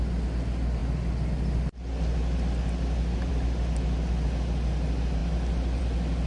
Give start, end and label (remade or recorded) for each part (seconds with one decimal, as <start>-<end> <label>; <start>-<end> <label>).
0.0-6.3 recorded